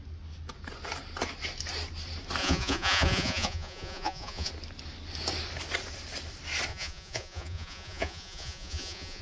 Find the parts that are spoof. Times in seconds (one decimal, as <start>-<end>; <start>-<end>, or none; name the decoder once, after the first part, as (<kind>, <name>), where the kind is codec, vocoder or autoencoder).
2.4-4.5 (vocoder, Vocos); 6.7-9.2